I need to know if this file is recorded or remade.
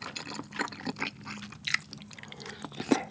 recorded